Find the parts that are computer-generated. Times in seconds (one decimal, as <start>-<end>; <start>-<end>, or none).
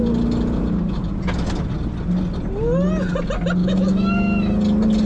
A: 3.6-4.5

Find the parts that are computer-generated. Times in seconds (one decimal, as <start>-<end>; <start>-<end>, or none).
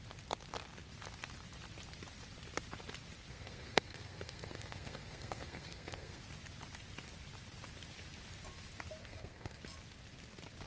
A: 3.3-6.2; 9.0-9.6